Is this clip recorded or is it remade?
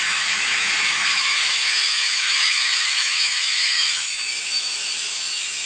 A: remade